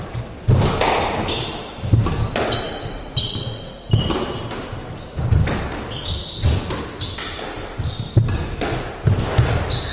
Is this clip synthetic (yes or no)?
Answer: no